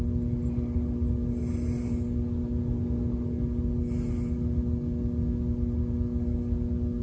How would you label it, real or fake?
real